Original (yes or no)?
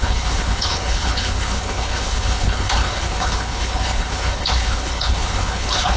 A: no